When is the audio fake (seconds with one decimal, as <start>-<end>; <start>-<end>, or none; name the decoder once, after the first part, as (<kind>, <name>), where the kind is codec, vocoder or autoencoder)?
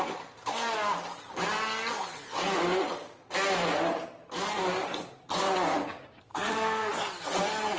6.3-6.9 (codec, SNAC)